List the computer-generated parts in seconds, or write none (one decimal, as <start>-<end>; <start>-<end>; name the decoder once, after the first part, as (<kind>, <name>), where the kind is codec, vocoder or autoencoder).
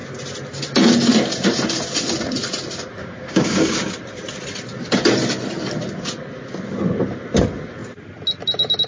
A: 3.0-3.8 (codec, DAC)